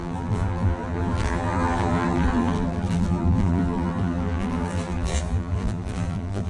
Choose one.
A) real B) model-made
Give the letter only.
B